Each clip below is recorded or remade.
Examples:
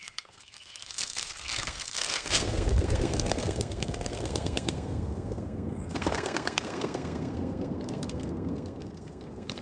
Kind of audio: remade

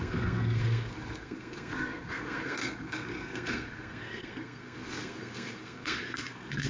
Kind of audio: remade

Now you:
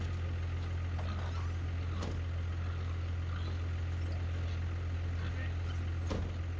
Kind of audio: recorded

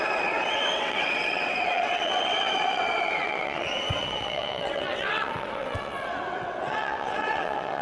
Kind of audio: remade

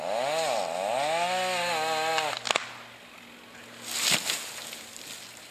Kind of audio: recorded